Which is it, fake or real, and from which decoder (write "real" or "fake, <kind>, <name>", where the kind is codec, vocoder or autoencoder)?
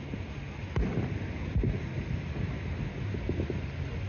real